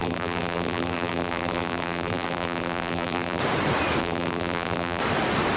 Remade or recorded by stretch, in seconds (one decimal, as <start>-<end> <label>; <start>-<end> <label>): 0.0-3.4 remade; 3.4-4.0 recorded; 4.0-5.0 remade; 5.0-5.6 recorded

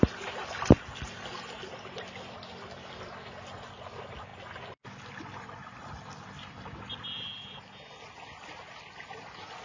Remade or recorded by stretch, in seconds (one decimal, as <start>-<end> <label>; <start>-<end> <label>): 0.0-9.6 recorded